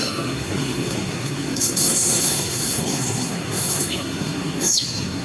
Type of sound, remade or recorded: remade